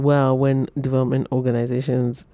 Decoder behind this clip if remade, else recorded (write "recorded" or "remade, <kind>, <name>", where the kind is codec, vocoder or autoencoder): recorded